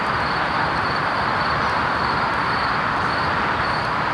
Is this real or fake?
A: real